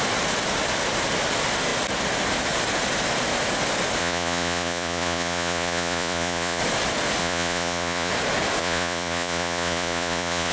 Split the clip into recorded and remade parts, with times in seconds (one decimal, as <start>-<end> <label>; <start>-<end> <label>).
0.0-4.0 recorded; 4.0-6.6 remade; 6.6-7.2 recorded; 7.2-8.1 remade; 8.1-8.6 recorded; 8.6-10.5 remade